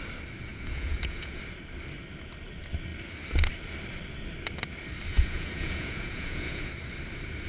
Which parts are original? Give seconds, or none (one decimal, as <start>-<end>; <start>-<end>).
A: 0.0-0.5; 1.4-5.1; 6.7-7.5